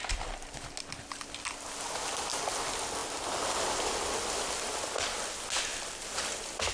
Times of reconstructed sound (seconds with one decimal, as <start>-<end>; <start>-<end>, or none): 5.7-6.7